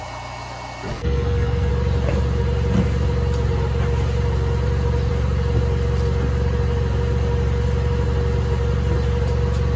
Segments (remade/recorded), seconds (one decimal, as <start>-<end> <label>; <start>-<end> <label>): 0.0-0.9 recorded; 0.9-1.7 remade; 1.7-9.8 recorded